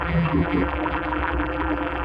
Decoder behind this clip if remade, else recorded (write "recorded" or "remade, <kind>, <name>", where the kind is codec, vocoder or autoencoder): remade, vocoder, BigVGAN v2